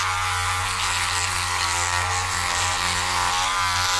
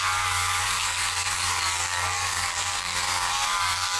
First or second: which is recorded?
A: first